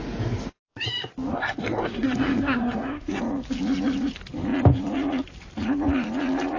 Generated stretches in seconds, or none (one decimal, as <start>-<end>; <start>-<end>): 1.3-3.2